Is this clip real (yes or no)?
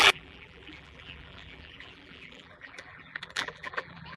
no